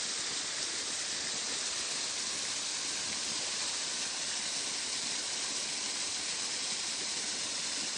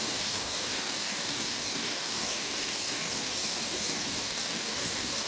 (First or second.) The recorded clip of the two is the first